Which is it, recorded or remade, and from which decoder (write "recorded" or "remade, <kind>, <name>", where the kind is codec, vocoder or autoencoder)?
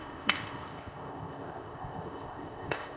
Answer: remade, codec, ZipCodec